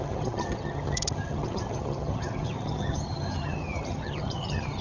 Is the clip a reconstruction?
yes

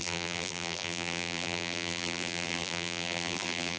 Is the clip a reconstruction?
yes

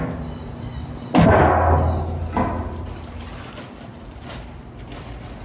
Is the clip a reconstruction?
no